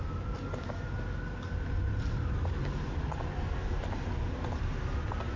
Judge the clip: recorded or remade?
recorded